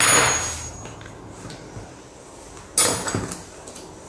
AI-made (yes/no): no